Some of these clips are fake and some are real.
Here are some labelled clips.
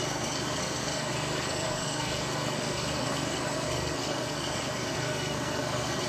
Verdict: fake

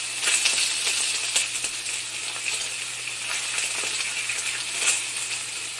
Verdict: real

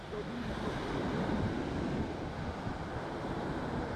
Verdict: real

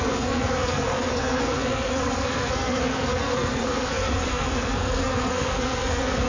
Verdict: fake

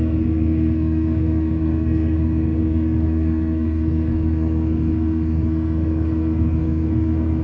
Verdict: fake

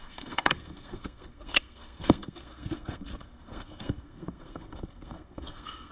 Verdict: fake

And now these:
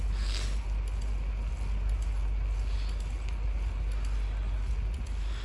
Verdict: real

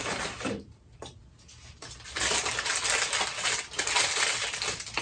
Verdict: real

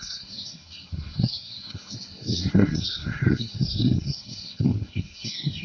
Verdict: fake